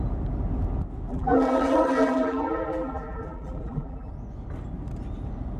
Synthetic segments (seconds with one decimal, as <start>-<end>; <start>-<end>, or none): 1.1-4.1